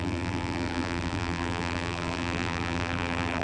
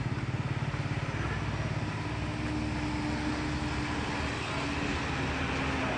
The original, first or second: second